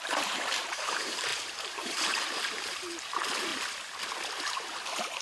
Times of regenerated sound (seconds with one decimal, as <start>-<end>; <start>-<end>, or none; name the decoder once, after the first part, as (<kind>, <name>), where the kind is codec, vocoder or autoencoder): 0.0-3.5 (vocoder, BigVGAN v2); 4.4-5.2